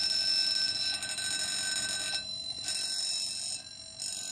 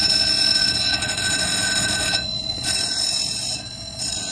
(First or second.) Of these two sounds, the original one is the first